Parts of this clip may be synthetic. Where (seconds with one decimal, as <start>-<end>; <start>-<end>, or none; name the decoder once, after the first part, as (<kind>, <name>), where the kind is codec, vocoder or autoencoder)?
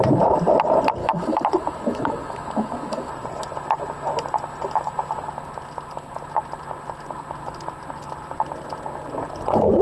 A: 1.0-3.1 (autoencoder, DAC-VAE)